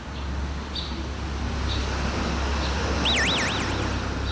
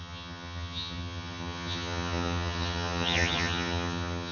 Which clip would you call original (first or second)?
first